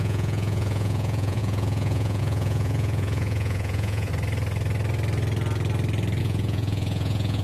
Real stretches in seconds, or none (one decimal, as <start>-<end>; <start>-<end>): 4.1-6.2